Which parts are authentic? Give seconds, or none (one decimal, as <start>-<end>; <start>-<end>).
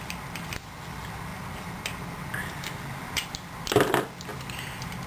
0.0-5.1